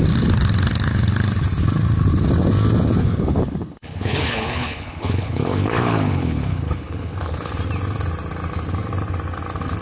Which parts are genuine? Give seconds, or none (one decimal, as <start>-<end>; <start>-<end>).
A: 0.0-3.0; 7.5-9.8

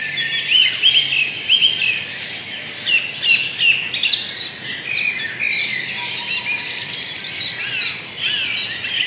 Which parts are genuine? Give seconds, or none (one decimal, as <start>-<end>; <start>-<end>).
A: 0.0-9.1